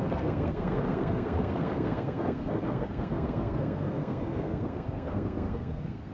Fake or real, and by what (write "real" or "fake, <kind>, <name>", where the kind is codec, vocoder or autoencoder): fake, codec, SNAC